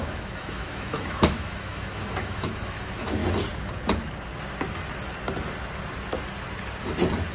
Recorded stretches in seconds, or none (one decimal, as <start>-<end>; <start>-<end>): 3.2-7.3